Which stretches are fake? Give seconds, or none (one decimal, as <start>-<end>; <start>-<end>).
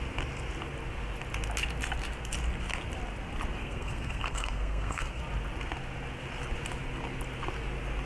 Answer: 3.6-5.2